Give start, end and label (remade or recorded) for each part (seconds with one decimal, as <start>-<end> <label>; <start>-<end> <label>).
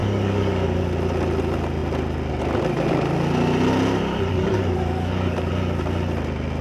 0.0-0.8 remade; 0.8-4.3 recorded; 4.3-5.5 remade; 5.5-6.6 recorded